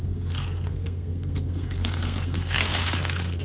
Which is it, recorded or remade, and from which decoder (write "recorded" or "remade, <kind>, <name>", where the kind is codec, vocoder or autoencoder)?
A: remade, codec, SNAC